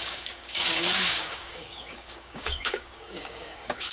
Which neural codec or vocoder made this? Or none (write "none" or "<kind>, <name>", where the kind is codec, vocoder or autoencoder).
codec, DAC